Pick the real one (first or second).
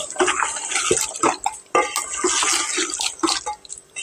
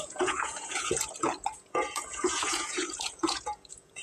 first